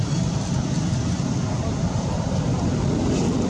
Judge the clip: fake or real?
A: fake